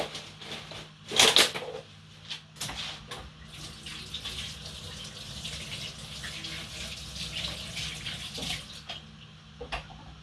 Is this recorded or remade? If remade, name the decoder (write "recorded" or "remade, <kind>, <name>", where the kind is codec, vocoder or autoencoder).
recorded